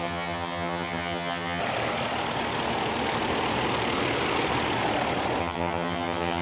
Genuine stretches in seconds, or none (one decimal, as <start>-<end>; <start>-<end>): 1.6-5.4